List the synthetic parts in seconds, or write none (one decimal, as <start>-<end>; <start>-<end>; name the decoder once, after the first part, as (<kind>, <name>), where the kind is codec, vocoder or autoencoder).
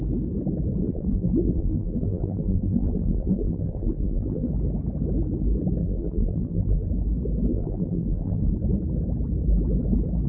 0.8-4.5 (vocoder, BigVGAN v2); 5.8-6.9; 7.5-8.5